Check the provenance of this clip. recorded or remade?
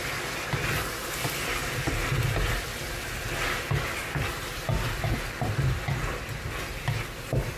recorded